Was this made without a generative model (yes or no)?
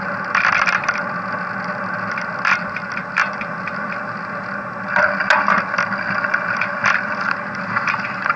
yes